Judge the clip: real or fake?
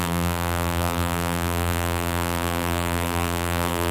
fake